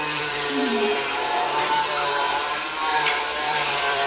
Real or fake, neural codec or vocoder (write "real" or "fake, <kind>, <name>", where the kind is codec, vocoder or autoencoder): fake, vocoder, BigVGAN v2